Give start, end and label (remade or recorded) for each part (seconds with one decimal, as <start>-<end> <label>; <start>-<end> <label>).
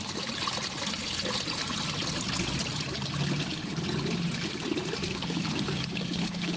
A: 0.0-5.0 recorded; 5.0-6.6 remade